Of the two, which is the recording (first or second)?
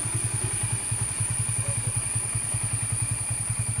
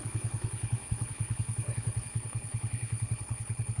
first